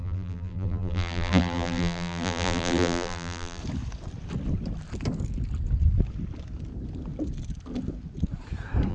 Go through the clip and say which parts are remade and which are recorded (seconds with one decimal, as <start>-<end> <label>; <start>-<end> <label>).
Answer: 0.0-3.6 remade; 3.6-8.9 recorded